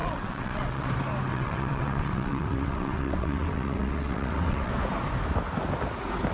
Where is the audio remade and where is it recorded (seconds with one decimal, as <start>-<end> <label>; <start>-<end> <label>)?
0.0-0.9 remade; 0.9-1.3 recorded; 1.3-4.7 remade; 4.7-6.3 recorded